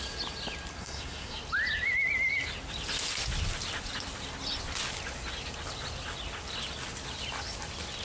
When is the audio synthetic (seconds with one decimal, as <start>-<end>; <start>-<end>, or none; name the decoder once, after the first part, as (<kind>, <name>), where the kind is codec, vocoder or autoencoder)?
0.8-1.4 (codec, SNAC)